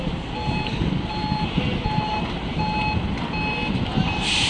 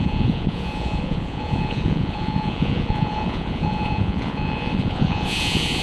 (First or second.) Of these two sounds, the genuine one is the first